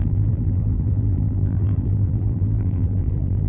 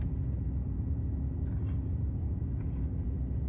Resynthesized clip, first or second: first